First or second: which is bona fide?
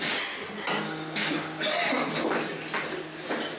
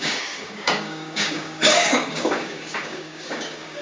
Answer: first